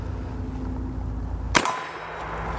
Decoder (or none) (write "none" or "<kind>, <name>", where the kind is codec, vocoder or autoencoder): none